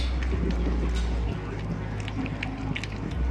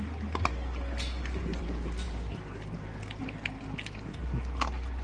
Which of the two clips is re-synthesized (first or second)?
second